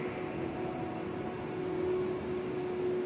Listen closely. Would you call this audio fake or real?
real